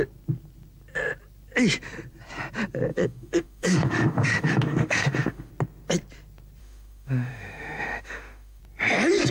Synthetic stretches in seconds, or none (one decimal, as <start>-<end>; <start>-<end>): 2.9-5.5; 6.6-8.6